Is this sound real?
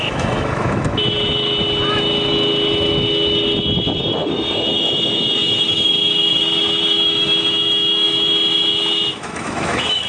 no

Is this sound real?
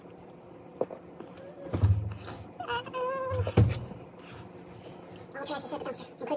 yes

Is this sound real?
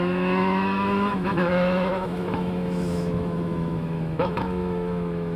no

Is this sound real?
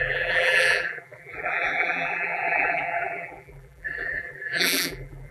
no